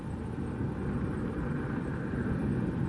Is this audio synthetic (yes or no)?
no